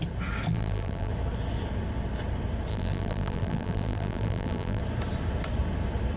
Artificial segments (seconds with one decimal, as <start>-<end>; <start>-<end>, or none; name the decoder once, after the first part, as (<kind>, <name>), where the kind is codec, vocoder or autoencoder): 0.5-1.1 (vocoder, BigVGAN v2); 2.7-4.8